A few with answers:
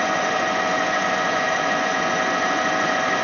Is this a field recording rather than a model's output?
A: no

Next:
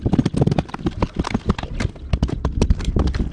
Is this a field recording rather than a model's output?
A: yes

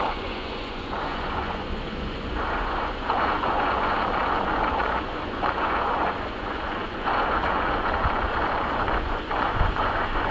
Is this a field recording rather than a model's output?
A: no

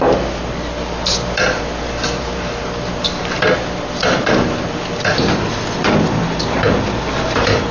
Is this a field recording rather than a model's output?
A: yes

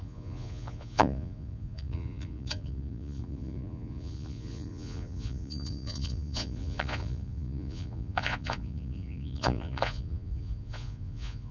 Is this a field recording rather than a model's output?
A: no